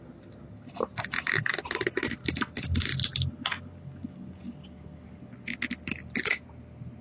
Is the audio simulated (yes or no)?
no